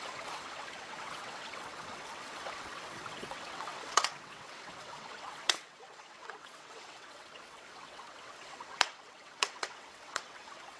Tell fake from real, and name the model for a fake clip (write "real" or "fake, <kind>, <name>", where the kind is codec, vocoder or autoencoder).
fake, vocoder, WaveNeXt